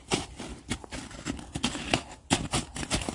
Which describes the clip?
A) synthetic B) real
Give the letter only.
B